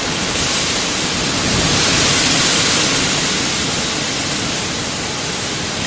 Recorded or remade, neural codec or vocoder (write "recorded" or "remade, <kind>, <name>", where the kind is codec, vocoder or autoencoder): recorded